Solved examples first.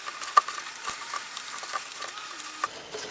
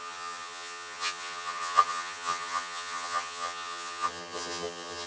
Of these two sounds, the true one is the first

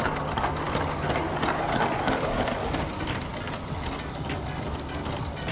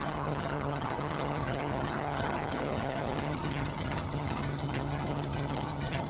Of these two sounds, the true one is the first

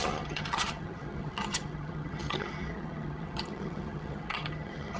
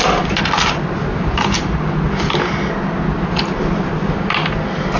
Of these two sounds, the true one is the second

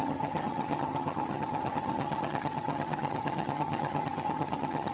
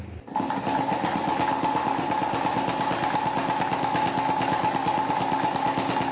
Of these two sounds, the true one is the second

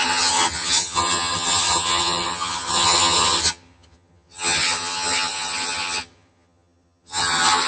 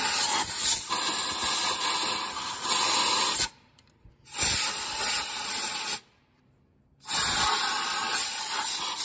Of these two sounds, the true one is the second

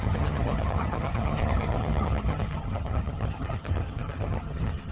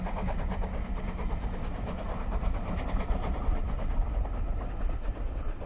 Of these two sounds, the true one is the second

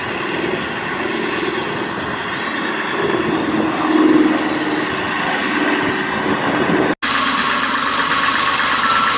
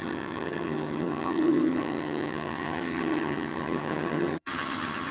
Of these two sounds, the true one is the first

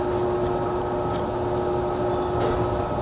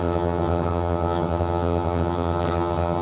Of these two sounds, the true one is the first